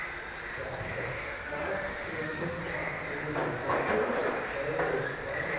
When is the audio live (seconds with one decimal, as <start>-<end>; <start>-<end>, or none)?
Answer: 0.0-0.9; 2.6-5.6